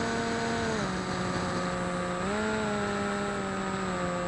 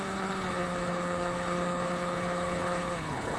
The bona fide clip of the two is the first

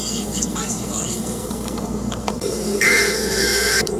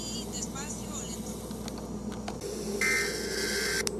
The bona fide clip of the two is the second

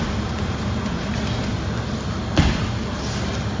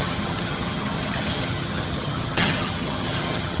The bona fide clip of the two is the first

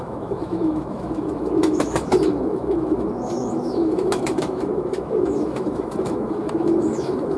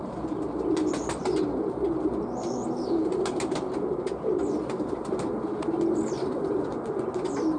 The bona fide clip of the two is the second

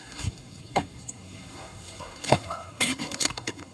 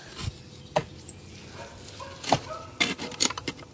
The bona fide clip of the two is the second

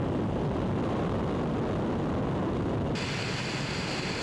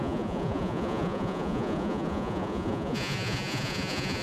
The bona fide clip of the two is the first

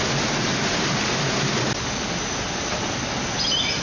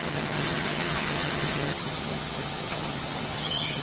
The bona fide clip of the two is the first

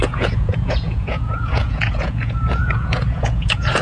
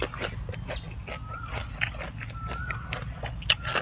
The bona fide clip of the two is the second